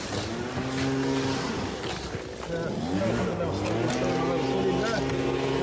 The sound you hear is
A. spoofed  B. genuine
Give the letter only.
B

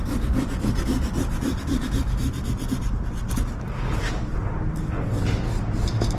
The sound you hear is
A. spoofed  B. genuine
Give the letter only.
B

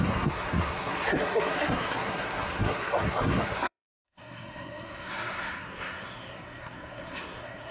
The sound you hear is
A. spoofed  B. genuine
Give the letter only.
A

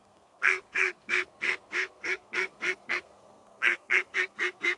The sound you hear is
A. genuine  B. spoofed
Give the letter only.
B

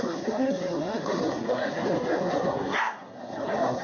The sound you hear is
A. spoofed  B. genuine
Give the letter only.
A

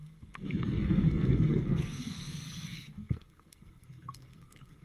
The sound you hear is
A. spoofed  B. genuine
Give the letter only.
A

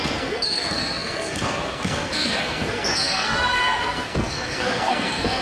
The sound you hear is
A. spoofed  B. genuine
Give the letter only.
A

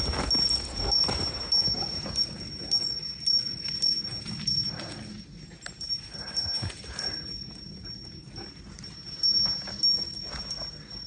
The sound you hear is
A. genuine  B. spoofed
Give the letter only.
A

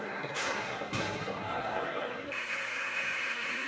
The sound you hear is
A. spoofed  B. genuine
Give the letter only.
A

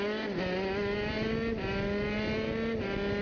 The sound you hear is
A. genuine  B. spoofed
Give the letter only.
A